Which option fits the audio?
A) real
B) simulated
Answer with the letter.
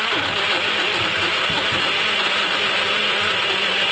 A